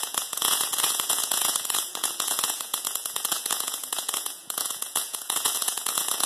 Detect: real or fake fake